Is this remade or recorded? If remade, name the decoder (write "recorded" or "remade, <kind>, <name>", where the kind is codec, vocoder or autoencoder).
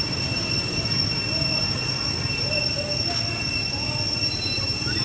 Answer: recorded